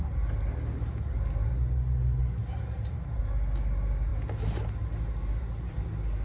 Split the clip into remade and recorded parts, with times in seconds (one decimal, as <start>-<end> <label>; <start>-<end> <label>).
0.0-2.2 recorded; 2.2-3.2 remade; 3.2-6.2 recorded